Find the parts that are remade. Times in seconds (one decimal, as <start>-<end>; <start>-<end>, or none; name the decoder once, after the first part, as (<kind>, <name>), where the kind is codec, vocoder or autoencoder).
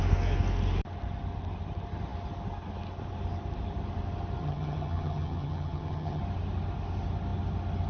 4.4-6.2 (vocoder, HiFi-GAN)